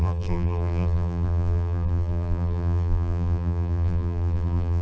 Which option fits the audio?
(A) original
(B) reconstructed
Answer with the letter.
B